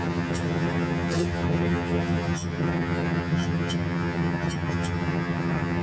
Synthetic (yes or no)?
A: yes